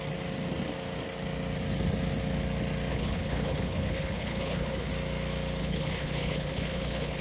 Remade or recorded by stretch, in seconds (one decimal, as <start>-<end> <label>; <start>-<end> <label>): 0.0-2.9 recorded; 2.9-4.9 remade; 4.9-5.6 recorded; 5.6-7.2 remade